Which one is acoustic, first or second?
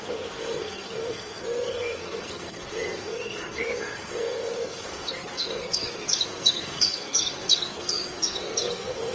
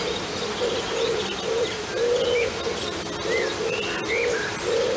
second